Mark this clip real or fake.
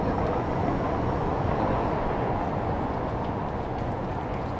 fake